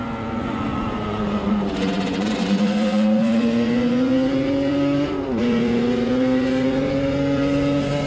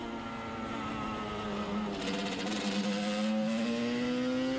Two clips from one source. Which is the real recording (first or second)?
second